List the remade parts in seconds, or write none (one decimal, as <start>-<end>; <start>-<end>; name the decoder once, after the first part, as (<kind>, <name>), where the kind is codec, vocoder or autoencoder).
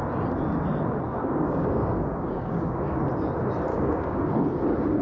1.2-3.0 (codec, DAC); 3.7-4.3